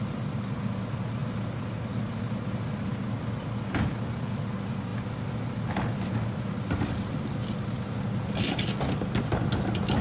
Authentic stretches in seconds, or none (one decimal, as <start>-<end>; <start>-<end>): 0.0-10.0